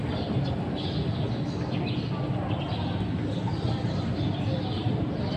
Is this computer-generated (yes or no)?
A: no